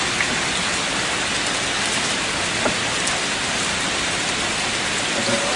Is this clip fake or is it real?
real